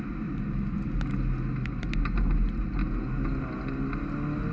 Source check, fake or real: real